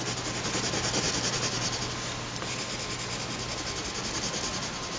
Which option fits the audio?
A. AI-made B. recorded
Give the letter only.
B